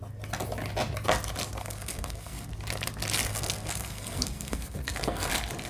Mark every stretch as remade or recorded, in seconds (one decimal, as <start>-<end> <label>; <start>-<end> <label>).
0.0-1.6 recorded; 1.6-2.5 remade; 2.5-3.3 recorded; 3.3-5.3 remade; 5.3-5.7 recorded